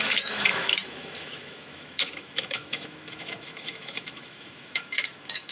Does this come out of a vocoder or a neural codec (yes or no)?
yes